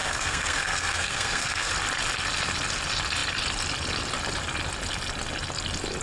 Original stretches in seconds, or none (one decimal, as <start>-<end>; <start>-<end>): 1.7-6.0